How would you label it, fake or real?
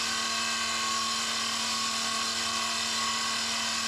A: real